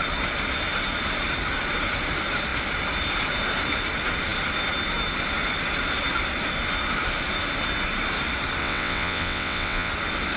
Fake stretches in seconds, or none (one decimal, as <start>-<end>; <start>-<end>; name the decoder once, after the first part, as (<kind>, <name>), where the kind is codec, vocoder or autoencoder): 8.6-9.9 (vocoder, WaveNeXt)